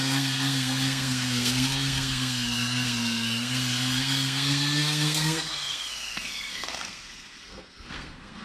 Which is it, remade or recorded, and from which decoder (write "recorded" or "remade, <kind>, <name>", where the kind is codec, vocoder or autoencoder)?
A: remade, codec, SNAC